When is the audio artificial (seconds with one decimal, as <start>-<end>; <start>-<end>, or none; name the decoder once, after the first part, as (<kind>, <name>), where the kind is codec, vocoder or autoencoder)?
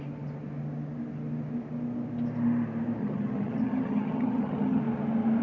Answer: 3.0-4.8 (vocoder, HiFi-GAN)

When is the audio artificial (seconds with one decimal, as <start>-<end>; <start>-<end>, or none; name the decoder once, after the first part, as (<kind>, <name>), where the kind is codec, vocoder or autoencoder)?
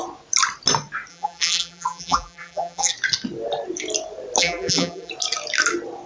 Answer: 1.1-2.9 (vocoder, BigVGAN v2); 4.4-5.1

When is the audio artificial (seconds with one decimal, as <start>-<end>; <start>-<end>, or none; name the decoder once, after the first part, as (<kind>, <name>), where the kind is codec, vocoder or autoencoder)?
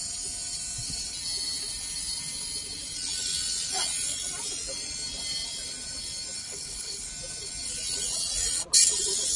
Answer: 6.4-7.1 (codec, HILCodec)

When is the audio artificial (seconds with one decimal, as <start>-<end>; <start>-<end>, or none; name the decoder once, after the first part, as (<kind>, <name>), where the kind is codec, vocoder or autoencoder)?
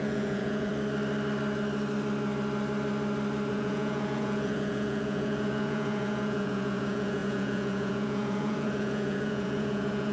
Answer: 0.0-0.7 (vocoder, Vocos); 3.5-10.1